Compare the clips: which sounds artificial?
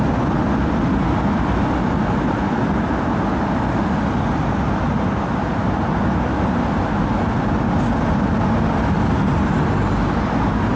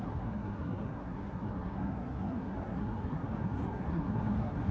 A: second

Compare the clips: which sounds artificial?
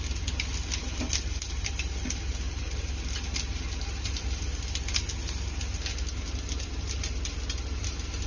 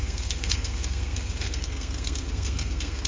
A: second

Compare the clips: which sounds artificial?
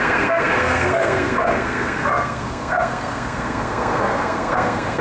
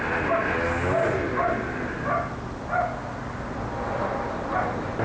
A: first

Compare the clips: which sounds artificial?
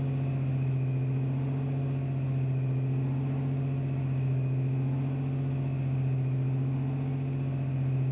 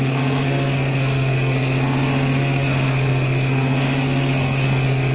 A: second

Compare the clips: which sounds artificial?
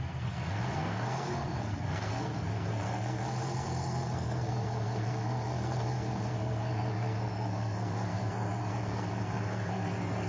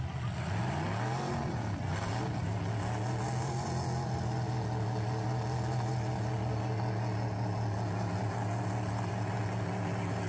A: first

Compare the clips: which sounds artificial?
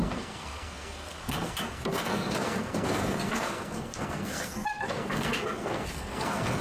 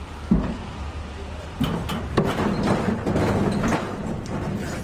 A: first